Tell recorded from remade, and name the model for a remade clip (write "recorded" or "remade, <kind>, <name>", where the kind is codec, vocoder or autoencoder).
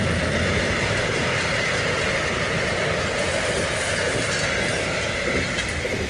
recorded